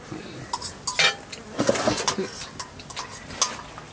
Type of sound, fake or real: real